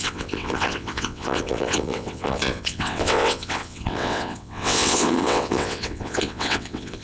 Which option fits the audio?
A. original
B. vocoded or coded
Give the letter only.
B